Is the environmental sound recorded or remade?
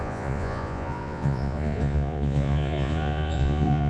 remade